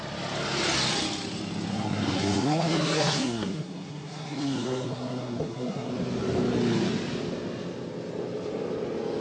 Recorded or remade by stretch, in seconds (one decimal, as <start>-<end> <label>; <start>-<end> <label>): 0.0-1.7 recorded; 1.7-5.9 remade; 5.9-9.2 recorded